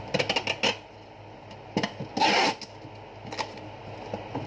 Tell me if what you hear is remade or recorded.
recorded